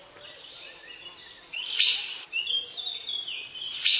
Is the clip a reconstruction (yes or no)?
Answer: no